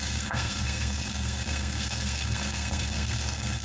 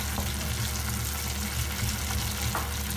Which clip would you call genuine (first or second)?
second